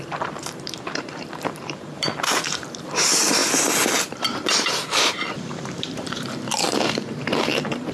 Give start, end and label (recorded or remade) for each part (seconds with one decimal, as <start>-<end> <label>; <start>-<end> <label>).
0.0-3.4 remade; 3.4-3.9 recorded; 3.9-7.9 remade